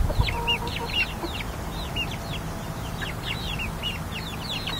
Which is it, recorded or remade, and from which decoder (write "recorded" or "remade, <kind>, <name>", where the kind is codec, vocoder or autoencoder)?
recorded